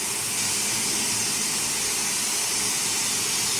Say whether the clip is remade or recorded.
recorded